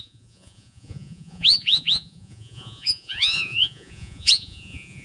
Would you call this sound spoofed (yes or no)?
yes